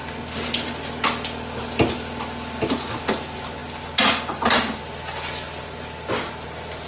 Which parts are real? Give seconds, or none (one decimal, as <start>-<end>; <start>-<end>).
0.0-6.9